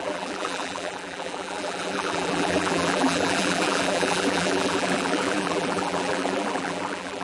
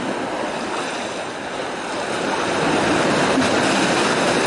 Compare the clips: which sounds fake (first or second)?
first